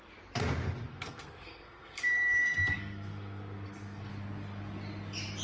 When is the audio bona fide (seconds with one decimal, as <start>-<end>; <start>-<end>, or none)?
0.0-0.9; 4.1-5.4